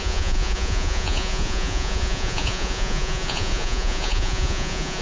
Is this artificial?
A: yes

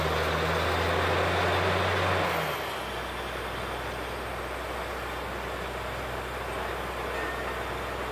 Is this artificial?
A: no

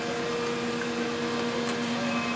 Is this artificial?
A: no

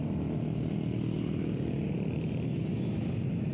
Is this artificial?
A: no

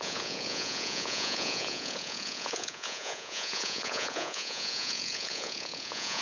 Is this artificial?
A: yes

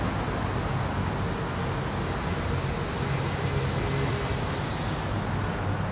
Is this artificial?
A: no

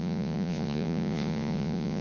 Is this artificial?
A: yes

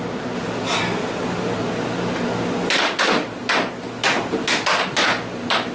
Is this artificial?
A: no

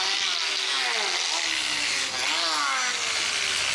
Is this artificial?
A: no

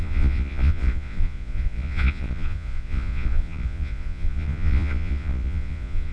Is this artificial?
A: yes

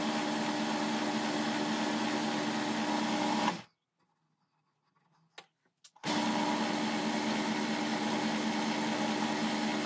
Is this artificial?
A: no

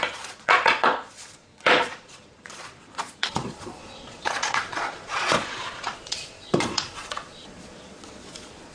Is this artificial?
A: yes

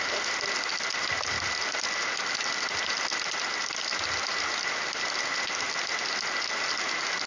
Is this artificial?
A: no